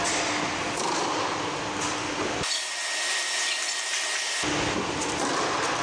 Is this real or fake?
real